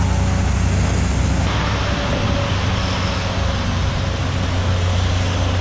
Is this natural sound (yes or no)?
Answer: yes